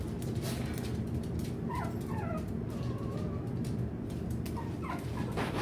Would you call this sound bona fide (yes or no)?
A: yes